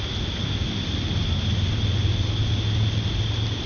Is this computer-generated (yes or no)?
no